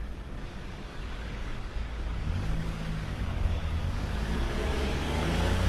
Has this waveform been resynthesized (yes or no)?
yes